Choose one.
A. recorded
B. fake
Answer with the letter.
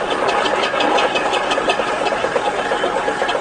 A